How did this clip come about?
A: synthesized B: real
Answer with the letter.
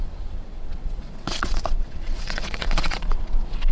A